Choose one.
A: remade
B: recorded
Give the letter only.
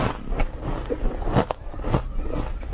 B